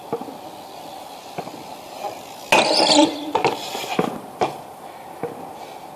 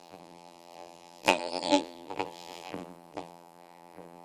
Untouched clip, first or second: first